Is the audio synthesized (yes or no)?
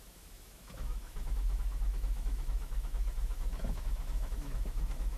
yes